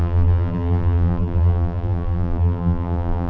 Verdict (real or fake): fake